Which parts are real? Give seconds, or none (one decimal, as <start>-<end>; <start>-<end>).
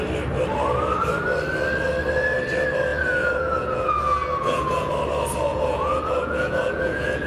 0.0-2.9; 4.9-5.5